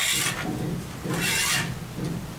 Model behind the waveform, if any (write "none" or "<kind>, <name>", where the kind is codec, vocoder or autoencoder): none